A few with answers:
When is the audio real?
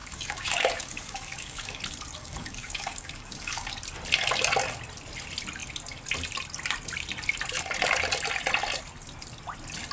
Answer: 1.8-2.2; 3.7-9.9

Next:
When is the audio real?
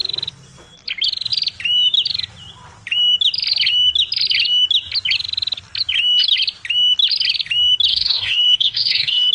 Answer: 0.0-7.9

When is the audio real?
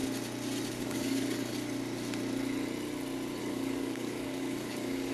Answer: 0.0-0.7; 1.5-3.4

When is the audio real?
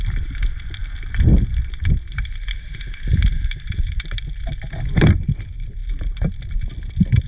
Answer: 0.0-7.3